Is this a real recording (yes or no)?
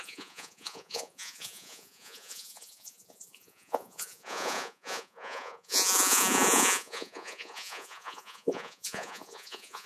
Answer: no